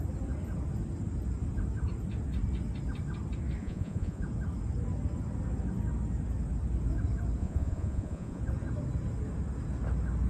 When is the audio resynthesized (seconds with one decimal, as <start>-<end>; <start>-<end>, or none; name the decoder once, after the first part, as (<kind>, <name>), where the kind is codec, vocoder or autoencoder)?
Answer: 3.6-4.2 (vocoder, Vocos); 7.4-8.4